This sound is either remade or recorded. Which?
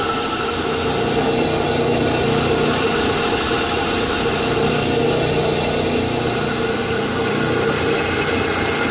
recorded